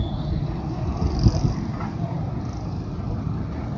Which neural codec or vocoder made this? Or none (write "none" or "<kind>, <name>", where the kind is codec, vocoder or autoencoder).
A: none